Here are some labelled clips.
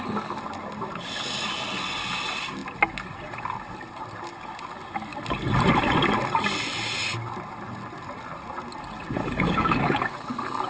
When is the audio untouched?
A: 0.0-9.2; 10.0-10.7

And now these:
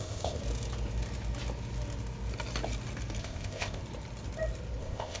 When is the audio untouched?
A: 0.4-3.2; 3.8-4.8

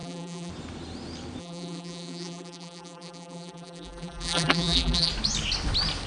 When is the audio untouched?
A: 0.5-1.4; 5.1-6.1

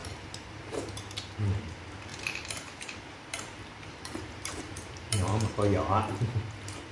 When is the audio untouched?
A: 1.1-2.1; 6.2-6.9

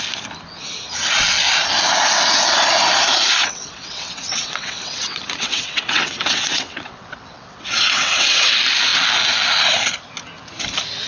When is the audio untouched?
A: 0.0-3.4; 8.5-11.1

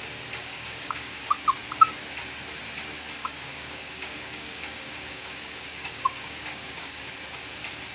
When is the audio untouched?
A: 0.0-0.4; 1.2-3.2; 7.1-7.9

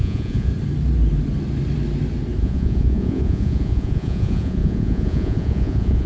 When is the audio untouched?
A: 0.5-2.4

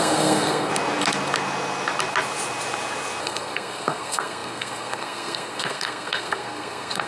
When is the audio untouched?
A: 0.7-3.2